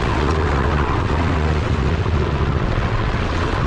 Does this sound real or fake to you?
fake